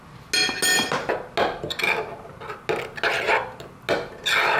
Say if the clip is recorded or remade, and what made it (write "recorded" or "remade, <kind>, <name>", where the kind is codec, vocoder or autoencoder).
recorded